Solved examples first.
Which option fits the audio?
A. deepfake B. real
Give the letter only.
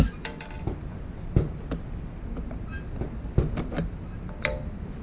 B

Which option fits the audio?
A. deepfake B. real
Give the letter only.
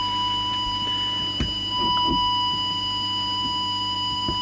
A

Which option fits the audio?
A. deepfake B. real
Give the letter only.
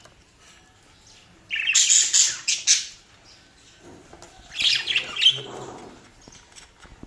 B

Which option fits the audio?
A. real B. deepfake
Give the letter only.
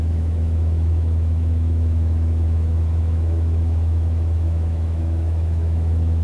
B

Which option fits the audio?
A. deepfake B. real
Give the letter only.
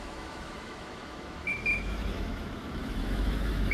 A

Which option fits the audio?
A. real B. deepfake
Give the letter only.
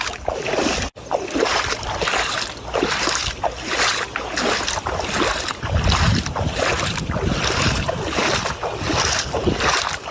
A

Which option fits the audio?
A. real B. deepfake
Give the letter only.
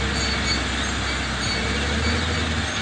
A